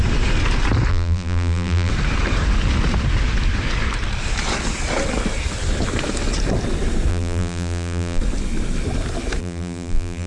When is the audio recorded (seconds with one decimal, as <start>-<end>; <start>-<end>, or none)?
0.0-0.9; 1.9-7.1; 8.2-9.4